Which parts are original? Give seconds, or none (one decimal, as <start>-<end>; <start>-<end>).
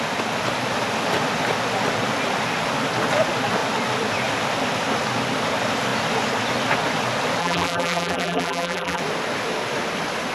0.0-7.4; 9.0-10.3